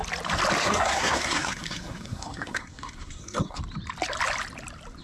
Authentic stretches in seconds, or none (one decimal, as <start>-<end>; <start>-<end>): 0.0-0.6; 3.6-5.0